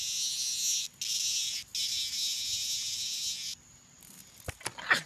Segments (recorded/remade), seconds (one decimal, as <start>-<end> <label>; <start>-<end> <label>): 0.0-5.1 recorded